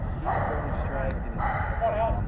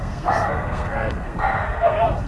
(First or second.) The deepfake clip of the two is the second